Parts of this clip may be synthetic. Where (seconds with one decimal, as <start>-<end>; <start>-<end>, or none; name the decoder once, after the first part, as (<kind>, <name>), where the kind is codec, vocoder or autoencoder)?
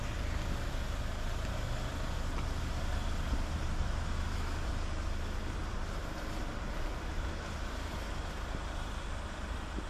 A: 5.6-6.5 (vocoder, BigVGAN v2)